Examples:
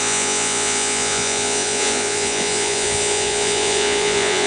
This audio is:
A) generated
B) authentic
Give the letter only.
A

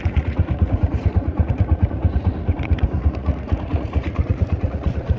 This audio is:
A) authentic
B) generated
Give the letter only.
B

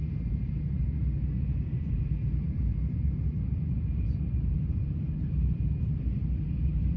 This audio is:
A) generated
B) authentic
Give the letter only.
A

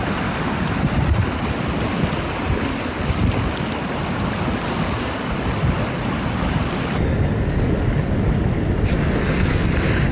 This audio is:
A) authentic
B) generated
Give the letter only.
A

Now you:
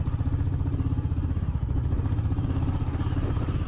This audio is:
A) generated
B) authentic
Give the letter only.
B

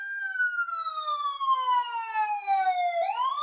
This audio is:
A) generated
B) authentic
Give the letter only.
B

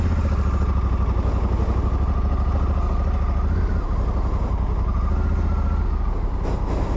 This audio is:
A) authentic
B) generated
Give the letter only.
A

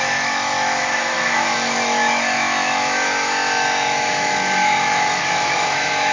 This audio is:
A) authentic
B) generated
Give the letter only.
B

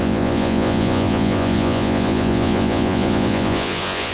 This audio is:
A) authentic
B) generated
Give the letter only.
B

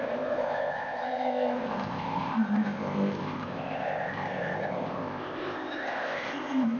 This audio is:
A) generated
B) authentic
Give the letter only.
A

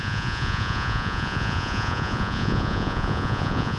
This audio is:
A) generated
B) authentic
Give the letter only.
A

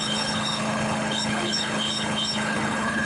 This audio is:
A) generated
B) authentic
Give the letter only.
A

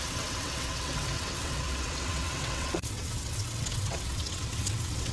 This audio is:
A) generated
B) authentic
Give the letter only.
A